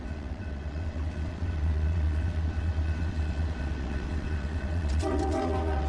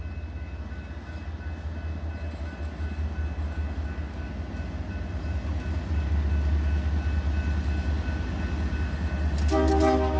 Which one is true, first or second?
second